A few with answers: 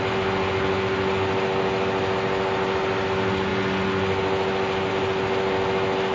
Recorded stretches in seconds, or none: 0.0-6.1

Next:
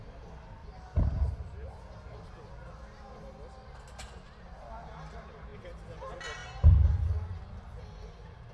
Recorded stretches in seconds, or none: 0.0-0.6; 1.3-5.5; 6.0-8.5

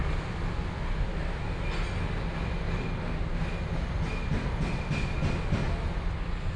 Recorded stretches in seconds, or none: 1.2-6.6

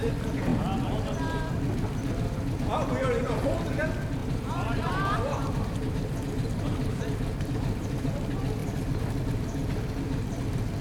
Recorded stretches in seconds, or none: 0.0-4.2; 8.1-10.8

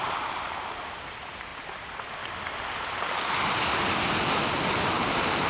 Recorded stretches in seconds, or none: 1.5-4.8

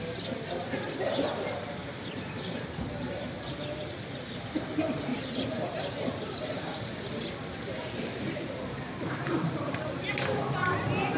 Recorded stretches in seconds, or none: 0.0-1.8; 3.9-5.1; 10.1-11.2

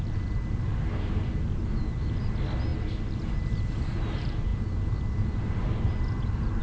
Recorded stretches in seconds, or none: 0.0-6.6

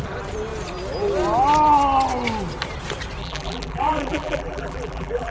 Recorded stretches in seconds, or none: 0.0-3.2